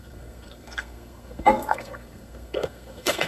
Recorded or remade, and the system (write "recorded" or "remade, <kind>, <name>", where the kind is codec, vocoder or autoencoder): remade, codec, SNAC